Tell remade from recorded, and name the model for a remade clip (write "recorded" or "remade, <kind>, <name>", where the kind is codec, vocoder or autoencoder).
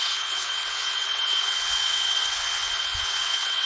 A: remade, vocoder, WaveNeXt